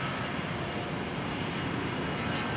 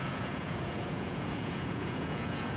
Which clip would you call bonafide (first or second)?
first